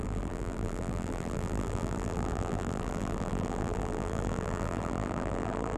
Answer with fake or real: fake